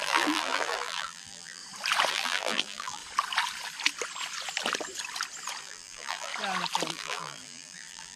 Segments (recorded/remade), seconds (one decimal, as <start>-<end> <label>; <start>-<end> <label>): 0.0-1.6 remade; 1.6-2.1 recorded; 2.1-3.0 remade; 3.0-5.6 recorded; 5.6-6.3 remade; 6.3-6.9 recorded; 6.9-8.2 remade